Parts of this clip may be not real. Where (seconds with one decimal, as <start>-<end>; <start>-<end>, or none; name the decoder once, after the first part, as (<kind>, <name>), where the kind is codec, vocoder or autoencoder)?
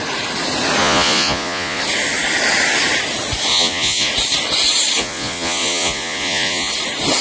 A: 0.8-1.8 (vocoder, Vocos); 3.5-4.1; 5.0-6.7